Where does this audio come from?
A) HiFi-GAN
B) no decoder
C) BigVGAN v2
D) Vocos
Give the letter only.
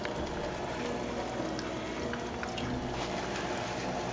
B